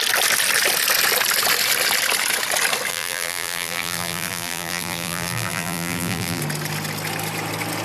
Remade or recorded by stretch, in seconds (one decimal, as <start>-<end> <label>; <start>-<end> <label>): 0.0-2.9 recorded; 2.9-6.4 remade; 6.4-7.8 recorded